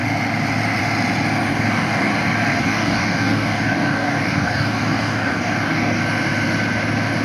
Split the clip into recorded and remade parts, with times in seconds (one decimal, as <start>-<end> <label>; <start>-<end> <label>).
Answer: 0.0-1.5 recorded; 1.5-2.1 remade; 2.1-2.6 recorded; 2.6-6.0 remade; 6.0-7.2 recorded